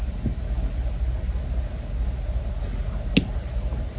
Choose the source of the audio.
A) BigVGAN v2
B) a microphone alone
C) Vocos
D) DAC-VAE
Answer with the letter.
B